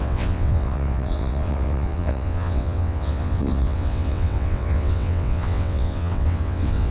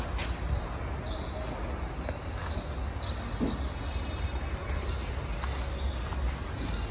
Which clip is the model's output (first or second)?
first